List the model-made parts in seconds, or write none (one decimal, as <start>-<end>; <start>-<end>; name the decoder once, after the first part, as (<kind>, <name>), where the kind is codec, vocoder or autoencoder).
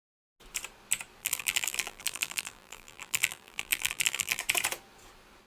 1.2-4.4 (vocoder, BigVGAN v2)